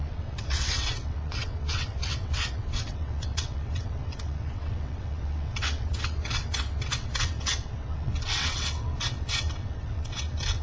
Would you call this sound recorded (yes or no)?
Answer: no